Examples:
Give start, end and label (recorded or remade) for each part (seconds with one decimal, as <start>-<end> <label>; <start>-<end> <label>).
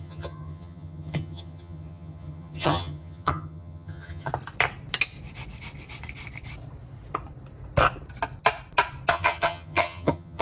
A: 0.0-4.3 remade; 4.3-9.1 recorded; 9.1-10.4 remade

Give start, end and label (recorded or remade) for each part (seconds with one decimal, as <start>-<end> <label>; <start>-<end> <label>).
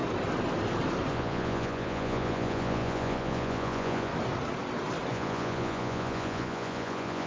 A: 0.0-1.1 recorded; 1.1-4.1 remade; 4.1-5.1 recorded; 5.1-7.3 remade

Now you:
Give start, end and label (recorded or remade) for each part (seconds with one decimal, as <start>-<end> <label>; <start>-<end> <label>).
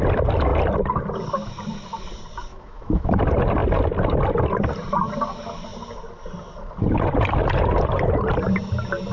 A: 0.0-2.5 recorded; 2.5-3.2 remade; 3.2-9.1 recorded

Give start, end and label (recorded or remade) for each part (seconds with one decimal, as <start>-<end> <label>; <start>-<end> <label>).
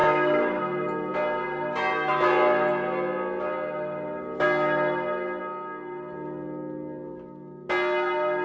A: 0.0-0.6 remade; 0.6-8.4 recorded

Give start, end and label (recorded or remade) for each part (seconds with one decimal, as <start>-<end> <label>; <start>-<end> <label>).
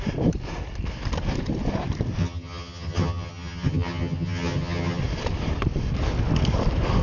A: 0.0-2.2 recorded; 2.2-5.0 remade; 5.0-7.0 recorded